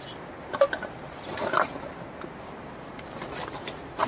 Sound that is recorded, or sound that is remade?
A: recorded